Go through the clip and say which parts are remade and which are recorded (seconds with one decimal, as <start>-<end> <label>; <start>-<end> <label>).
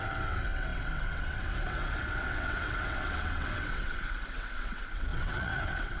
0.0-6.0 remade